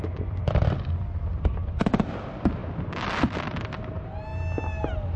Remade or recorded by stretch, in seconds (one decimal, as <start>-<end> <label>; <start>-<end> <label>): 0.0-5.2 recorded